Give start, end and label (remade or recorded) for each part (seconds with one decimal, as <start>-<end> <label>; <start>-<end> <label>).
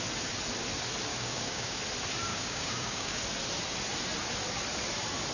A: 0.0-1.1 recorded; 1.1-1.8 remade; 1.8-2.3 recorded; 2.3-3.2 remade; 3.2-5.3 recorded